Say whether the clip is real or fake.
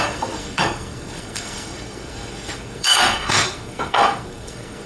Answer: fake